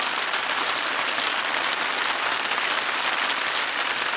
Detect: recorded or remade recorded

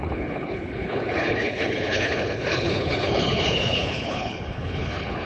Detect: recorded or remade remade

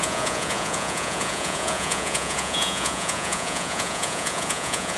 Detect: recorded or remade remade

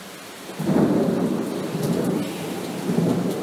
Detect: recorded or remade recorded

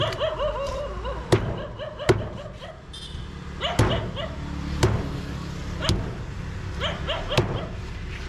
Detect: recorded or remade recorded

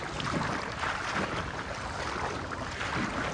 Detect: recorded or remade recorded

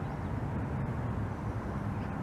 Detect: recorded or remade recorded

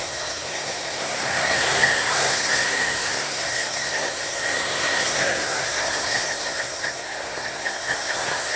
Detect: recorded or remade remade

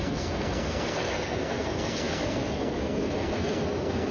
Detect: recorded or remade remade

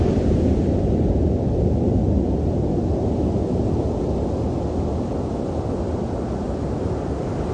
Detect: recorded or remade recorded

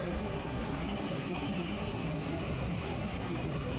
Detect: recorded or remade remade